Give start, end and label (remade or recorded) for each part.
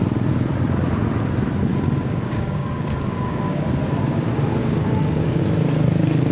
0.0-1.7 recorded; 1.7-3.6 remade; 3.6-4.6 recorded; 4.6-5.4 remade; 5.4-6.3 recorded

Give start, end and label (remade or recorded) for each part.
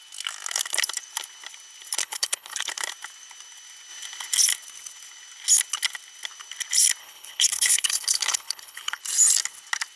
0.0-2.0 recorded; 2.0-2.7 remade; 2.7-7.0 recorded; 7.0-9.0 remade; 9.0-10.0 recorded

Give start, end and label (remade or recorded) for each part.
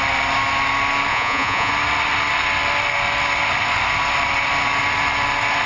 0.0-1.1 recorded; 1.1-1.7 remade; 1.7-5.7 recorded